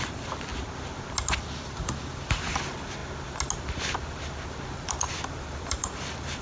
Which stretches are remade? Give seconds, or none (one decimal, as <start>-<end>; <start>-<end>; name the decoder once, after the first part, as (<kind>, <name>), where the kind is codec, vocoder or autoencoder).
0.0-0.5 (vocoder, BigVGAN v2); 1.6-3.0; 4.7-6.4